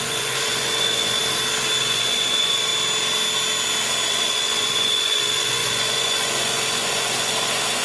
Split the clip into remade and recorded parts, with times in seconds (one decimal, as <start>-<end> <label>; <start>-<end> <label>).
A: 0.0-1.2 remade; 1.2-1.8 recorded; 1.8-2.7 remade; 2.7-4.1 recorded; 4.1-7.8 remade